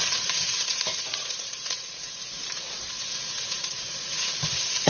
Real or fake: fake